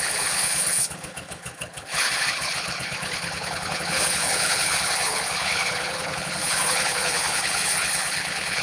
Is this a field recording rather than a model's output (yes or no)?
no